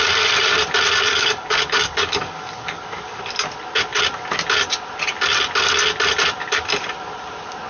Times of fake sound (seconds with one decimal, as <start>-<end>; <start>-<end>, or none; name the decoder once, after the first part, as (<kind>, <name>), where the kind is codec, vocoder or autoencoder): 1.1-3.2 (codec, DAC)